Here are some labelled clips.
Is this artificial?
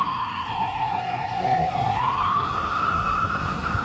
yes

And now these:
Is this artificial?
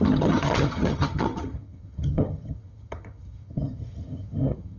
yes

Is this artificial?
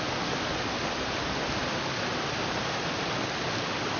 no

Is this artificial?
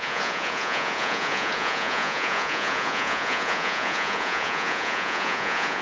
yes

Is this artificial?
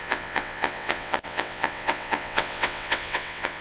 yes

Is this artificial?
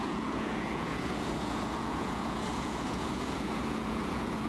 yes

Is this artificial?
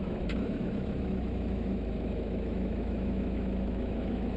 yes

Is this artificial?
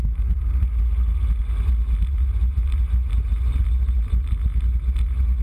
no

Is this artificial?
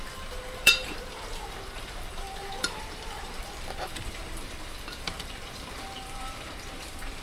yes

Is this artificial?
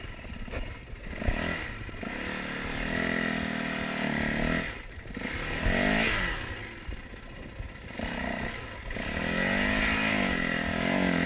no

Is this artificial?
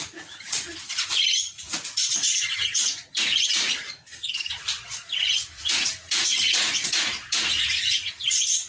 yes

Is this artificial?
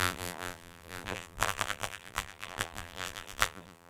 yes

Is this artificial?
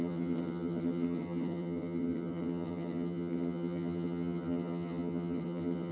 yes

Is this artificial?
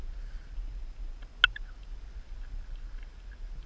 no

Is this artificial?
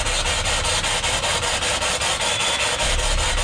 yes